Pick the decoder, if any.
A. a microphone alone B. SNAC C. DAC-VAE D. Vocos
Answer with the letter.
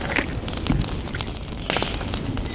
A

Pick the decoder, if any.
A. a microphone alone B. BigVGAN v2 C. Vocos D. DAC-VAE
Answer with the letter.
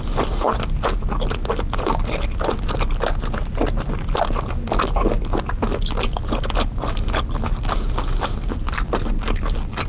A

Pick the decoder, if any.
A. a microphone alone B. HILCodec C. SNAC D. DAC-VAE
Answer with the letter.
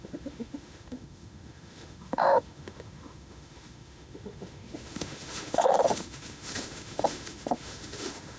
D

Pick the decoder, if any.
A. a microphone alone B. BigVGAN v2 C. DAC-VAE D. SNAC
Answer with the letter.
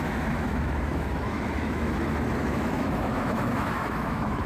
C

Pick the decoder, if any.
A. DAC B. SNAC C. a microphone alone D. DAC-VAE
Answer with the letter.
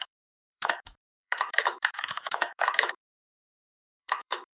D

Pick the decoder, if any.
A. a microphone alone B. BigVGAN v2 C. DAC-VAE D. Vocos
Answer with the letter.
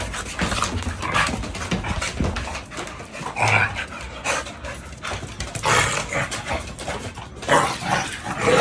A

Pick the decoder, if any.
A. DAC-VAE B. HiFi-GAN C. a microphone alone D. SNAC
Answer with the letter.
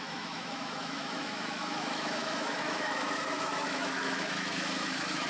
A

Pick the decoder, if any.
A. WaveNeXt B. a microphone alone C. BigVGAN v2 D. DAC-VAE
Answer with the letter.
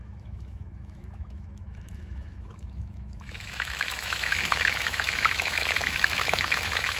D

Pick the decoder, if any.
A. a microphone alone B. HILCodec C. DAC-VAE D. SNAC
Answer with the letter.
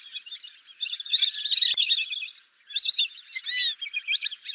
A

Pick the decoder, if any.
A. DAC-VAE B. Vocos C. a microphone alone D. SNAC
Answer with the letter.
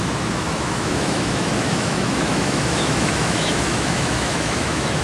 A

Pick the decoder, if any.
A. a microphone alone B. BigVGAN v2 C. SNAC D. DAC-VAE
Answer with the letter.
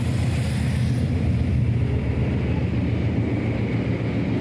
A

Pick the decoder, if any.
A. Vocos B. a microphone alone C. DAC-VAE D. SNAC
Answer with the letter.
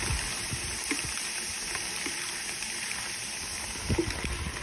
B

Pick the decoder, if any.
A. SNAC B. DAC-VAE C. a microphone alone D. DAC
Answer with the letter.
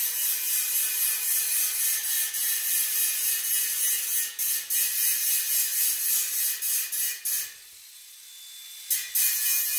C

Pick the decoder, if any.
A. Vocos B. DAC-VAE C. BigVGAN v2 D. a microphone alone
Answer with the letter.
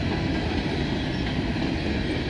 D